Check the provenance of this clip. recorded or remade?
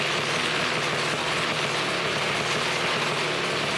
recorded